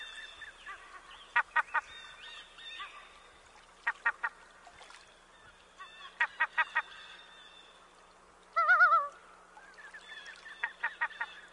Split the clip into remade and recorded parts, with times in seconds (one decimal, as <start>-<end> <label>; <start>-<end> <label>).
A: 0.0-11.5 recorded